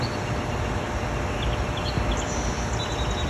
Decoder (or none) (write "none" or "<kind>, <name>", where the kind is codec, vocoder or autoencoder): none